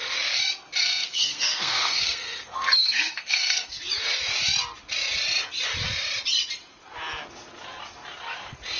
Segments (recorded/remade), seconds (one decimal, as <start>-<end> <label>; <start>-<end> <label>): 0.0-0.8 recorded; 0.8-3.8 remade; 3.8-8.8 recorded